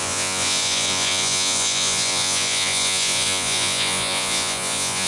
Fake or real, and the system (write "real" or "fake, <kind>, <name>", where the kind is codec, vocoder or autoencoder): fake, vocoder, Vocos